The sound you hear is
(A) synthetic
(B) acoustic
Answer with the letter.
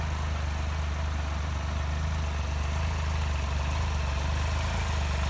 B